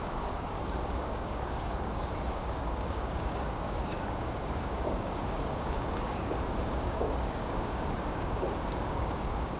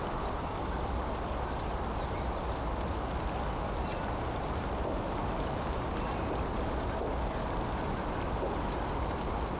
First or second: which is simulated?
first